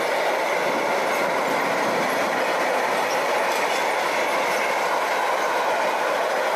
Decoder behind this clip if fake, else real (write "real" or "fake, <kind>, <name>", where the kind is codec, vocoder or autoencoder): real